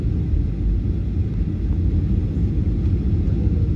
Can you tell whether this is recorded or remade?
recorded